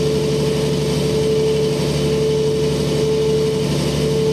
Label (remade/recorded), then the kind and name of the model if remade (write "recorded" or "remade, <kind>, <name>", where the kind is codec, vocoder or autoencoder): recorded